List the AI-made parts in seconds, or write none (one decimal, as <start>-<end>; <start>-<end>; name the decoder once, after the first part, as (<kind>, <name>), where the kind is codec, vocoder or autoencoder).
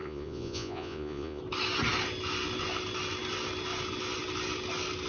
0.0-1.4 (vocoder, Vocos)